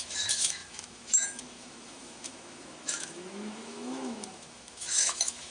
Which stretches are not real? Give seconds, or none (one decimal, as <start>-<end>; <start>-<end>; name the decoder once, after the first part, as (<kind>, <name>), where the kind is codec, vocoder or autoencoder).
0.0-5.5 (autoencoder, DAC-VAE)